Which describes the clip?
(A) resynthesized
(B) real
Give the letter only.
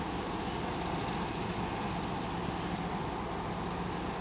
B